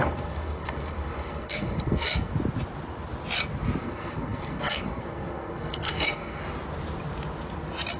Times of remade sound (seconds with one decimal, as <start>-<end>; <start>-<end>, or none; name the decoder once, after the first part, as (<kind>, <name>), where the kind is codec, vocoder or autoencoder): 0.0-2.3 (codec, SNAC); 3.8-6.4

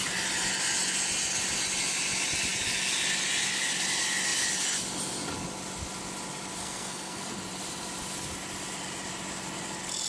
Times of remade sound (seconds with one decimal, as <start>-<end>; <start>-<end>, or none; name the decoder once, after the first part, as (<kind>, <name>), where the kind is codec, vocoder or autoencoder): 6.6-7.3 (codec, SNAC)

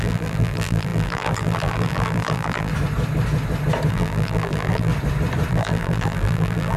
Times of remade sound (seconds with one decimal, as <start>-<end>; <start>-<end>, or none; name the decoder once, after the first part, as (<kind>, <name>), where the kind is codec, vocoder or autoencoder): 0.0-2.7 (vocoder, BigVGAN v2); 3.9-4.9; 5.5-6.8

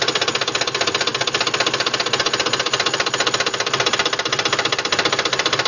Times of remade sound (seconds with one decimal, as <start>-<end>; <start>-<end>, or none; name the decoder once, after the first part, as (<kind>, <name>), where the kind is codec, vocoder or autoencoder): none

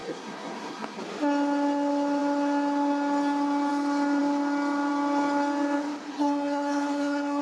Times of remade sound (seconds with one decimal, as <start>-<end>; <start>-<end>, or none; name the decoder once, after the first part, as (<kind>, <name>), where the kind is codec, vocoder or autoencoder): 0.0-1.0 (codec, SNAC); 6.1-7.4

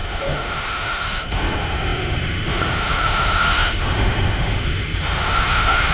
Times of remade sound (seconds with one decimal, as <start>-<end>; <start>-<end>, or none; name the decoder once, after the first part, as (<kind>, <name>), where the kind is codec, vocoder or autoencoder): 0.0-5.9 (autoencoder, DAC-VAE)

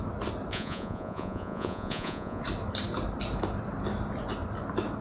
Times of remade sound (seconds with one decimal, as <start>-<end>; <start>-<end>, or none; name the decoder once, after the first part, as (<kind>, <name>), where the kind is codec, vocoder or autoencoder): 0.5-2.4 (vocoder, Vocos)